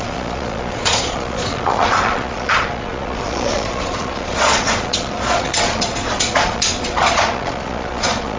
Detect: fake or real fake